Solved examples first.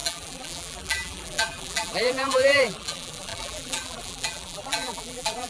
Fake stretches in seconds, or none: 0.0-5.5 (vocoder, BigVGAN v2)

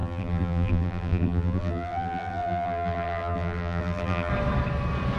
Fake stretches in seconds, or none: 0.0-4.3 (vocoder, BigVGAN v2)

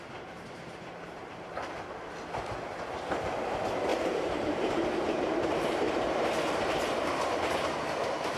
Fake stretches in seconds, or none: 3.9-7.5 (vocoder, BigVGAN v2)

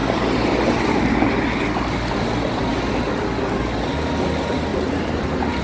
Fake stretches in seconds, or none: 4.7-5.6 (vocoder, BigVGAN v2)